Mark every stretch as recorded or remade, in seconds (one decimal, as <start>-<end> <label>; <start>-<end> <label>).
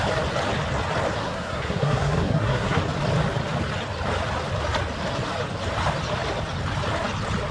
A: 0.0-1.2 recorded; 1.2-2.8 remade; 2.8-7.5 recorded